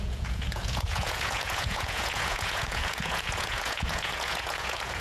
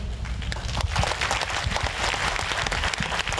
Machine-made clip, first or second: first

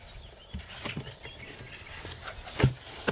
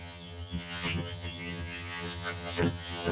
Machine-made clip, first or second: second